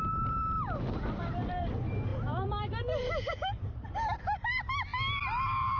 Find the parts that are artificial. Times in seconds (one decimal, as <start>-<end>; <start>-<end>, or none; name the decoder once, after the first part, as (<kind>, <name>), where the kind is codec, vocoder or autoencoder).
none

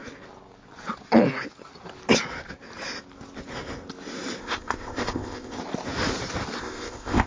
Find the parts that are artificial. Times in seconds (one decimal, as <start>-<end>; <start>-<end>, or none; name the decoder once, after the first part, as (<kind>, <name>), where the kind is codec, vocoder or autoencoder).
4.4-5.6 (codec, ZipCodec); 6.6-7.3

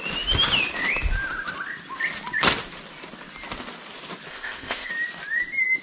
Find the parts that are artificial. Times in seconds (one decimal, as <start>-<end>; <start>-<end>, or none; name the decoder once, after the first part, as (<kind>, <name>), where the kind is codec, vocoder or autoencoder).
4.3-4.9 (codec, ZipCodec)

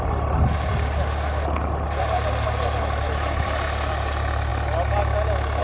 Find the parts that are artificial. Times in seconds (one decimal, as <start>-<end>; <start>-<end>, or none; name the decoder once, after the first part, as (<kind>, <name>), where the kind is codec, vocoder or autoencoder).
none

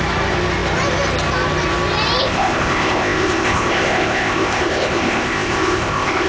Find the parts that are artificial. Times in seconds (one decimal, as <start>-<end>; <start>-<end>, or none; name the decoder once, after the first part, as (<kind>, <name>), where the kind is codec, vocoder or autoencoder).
2.2-6.3 (codec, ZipCodec)

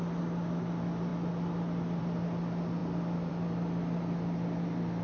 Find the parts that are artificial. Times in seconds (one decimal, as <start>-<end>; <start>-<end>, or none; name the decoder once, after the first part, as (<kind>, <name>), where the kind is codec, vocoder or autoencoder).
none

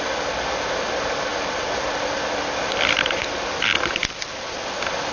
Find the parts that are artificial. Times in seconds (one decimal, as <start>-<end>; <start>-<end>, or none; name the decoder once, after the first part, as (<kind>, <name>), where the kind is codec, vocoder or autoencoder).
none